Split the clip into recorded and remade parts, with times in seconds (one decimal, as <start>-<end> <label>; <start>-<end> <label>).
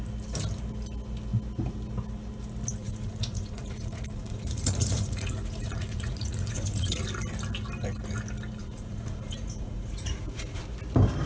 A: 0.0-2.8 recorded; 2.8-7.0 remade; 7.0-8.6 recorded; 8.6-10.6 remade; 10.6-11.3 recorded